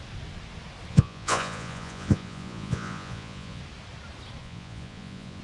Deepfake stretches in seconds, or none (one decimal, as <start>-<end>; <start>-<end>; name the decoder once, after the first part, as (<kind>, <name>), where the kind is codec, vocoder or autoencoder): 0.9-3.6 (vocoder, Vocos); 4.4-5.4